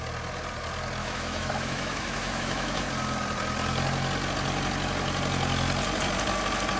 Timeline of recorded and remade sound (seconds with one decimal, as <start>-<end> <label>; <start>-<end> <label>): 0.0-1.0 recorded; 1.0-2.9 remade; 2.9-6.8 recorded